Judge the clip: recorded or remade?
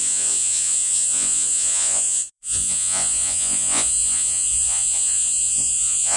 remade